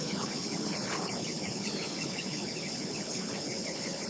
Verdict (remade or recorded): remade